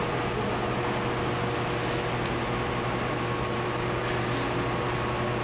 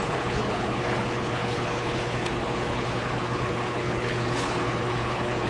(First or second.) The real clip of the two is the first